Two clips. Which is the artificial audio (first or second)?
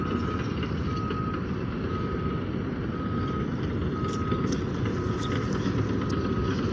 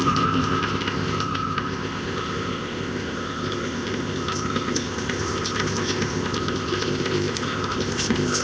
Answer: second